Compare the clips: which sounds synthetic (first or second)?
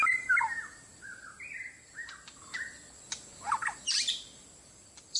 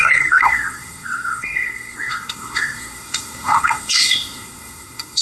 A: second